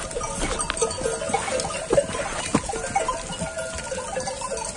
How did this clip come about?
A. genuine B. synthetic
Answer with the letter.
A